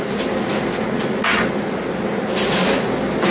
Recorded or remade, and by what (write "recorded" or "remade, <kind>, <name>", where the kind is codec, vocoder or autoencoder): recorded